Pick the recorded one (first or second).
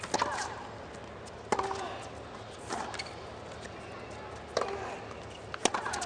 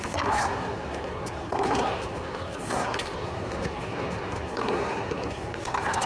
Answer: first